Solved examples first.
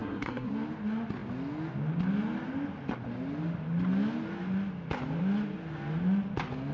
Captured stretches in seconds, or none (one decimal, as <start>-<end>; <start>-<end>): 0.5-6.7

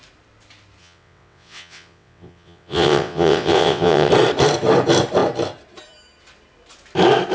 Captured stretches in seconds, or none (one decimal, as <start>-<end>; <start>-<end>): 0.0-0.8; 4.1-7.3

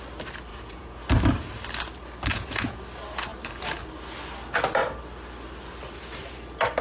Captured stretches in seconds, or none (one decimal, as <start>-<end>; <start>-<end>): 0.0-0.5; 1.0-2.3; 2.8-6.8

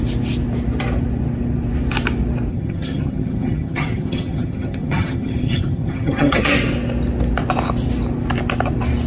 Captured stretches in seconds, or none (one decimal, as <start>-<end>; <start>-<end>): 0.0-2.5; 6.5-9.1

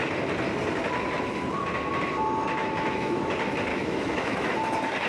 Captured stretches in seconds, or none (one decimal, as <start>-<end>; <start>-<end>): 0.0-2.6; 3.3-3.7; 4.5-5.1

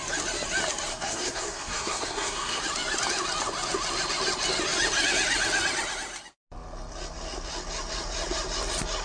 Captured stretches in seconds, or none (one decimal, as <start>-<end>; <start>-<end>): 0.0-0.9; 2.6-9.0

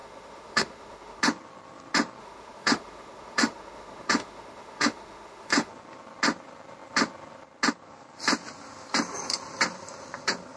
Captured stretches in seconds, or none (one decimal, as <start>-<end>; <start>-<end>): 1.2-2.2; 5.7-10.6